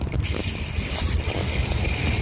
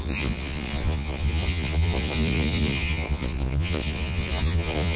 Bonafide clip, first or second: first